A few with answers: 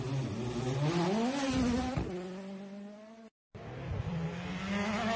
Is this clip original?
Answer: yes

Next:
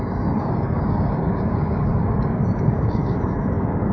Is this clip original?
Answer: no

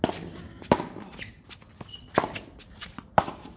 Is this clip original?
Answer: yes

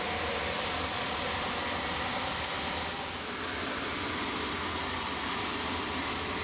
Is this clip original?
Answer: yes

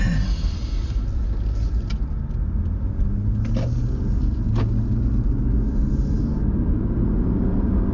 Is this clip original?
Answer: yes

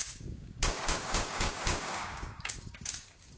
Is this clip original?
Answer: no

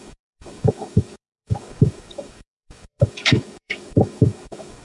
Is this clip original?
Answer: no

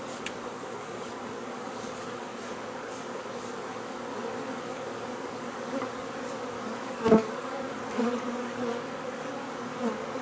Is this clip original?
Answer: no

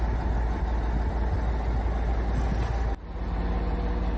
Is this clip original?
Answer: yes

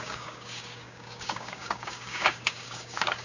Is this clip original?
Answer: no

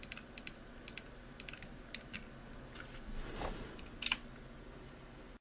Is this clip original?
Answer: yes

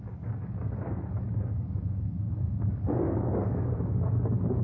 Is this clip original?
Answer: no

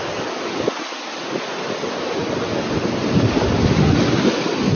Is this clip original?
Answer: yes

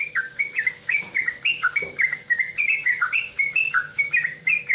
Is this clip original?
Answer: no